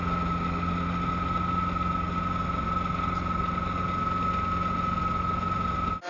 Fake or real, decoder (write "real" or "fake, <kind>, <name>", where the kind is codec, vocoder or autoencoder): real